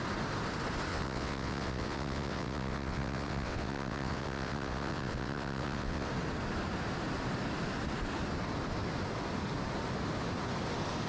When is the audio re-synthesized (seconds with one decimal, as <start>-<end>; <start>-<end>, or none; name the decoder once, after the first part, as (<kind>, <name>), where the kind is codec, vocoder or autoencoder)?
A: 0.9-6.1 (vocoder, WaveNeXt)